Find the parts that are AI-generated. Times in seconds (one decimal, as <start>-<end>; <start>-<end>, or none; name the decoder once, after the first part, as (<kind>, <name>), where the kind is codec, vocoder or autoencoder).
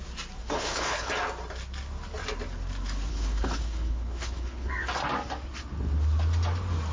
0.4-1.1 (codec, HILCodec); 3.1-4.7